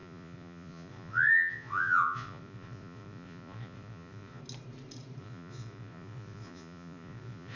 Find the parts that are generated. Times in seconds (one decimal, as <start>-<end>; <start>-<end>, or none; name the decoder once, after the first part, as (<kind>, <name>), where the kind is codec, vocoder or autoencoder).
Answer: 0.0-4.4 (vocoder, Vocos); 5.2-7.6